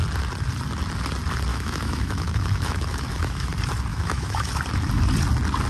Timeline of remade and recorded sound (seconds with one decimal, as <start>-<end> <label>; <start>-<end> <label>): 0.0-1.5 recorded; 1.5-3.5 remade; 3.5-3.9 recorded; 3.9-4.5 remade; 4.5-5.7 recorded